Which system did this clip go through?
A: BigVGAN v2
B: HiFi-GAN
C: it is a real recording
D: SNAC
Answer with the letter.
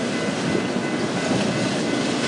C